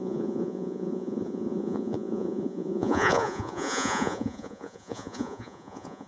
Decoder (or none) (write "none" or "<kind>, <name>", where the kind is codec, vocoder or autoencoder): vocoder, Vocos